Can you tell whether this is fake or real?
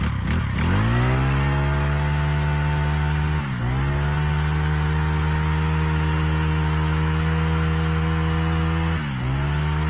real